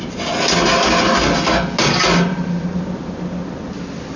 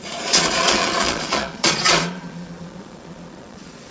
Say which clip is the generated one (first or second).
second